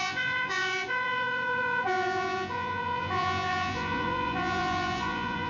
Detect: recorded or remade remade